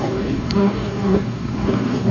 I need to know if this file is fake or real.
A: fake